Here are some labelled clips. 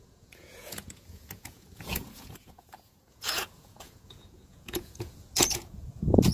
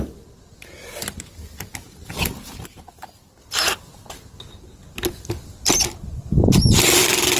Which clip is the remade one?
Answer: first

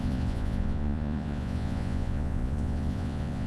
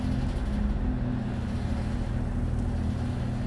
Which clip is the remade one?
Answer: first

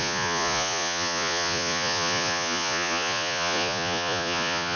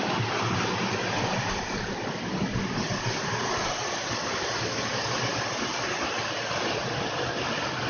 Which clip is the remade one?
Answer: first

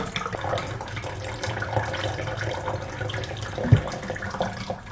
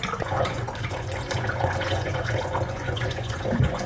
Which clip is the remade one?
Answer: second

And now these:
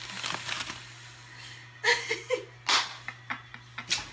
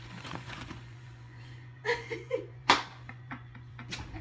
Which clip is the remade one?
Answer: second